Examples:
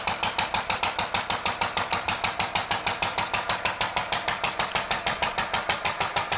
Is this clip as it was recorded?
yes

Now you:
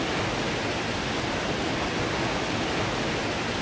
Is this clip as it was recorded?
yes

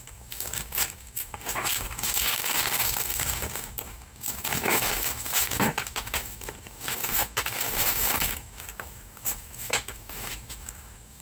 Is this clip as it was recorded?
no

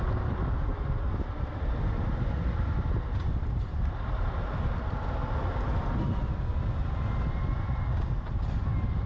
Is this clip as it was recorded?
no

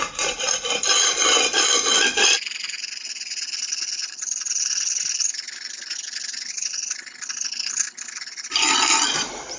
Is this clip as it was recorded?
yes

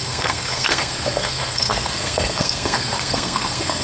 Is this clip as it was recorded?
no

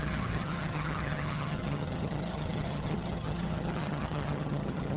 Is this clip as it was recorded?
no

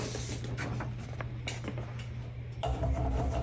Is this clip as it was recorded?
yes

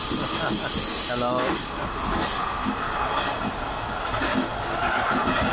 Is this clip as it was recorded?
yes